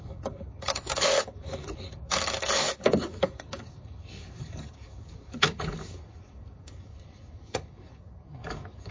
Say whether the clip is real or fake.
fake